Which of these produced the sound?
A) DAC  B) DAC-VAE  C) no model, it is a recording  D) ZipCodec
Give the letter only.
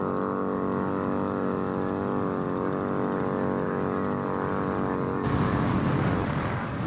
C